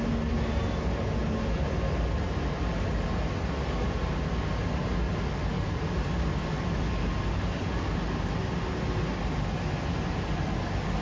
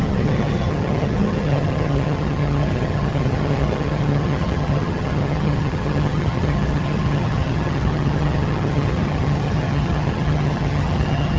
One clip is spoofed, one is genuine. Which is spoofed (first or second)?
second